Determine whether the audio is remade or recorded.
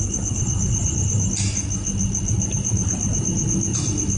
recorded